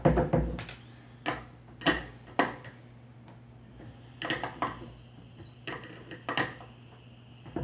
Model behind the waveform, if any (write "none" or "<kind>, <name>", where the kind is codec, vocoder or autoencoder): none